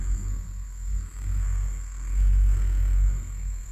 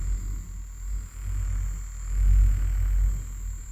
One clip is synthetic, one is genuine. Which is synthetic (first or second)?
first